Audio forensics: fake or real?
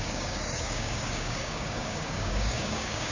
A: fake